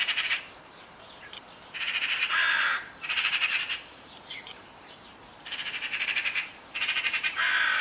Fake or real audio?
fake